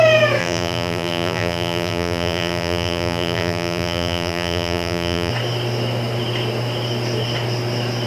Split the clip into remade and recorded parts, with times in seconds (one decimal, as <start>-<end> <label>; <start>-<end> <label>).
0.0-0.4 recorded; 0.4-5.3 remade; 5.3-8.1 recorded

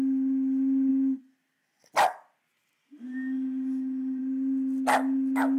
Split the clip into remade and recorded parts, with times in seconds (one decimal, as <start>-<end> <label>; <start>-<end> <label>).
0.0-5.6 recorded

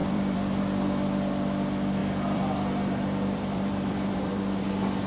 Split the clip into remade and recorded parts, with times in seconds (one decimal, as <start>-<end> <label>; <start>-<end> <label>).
0.0-0.6 remade; 0.6-2.0 recorded; 2.0-4.4 remade; 4.4-5.1 recorded

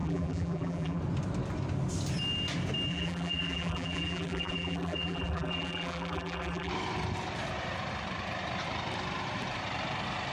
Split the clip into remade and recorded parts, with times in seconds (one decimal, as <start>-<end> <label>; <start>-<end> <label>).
0.0-1.0 remade; 1.0-2.9 recorded; 2.9-6.7 remade; 6.7-10.3 recorded

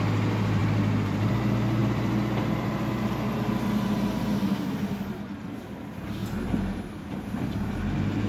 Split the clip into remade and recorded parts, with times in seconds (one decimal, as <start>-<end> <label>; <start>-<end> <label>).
0.0-0.6 recorded; 0.6-1.3 remade; 1.3-1.8 recorded; 1.8-2.9 remade; 2.9-6.2 recorded; 6.2-7.8 remade; 7.8-8.3 recorded

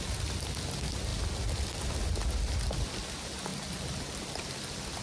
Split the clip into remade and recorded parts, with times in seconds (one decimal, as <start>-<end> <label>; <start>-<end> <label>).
0.0-3.5 recorded; 3.5-4.2 remade; 4.2-5.0 recorded

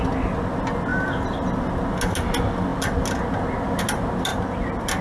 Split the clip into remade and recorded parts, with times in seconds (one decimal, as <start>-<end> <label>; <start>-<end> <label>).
0.0-0.9 recorded; 0.9-1.6 remade; 1.6-5.0 recorded

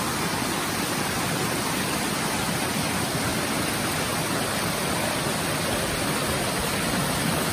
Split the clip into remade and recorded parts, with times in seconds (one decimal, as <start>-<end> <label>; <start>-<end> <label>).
0.0-7.5 recorded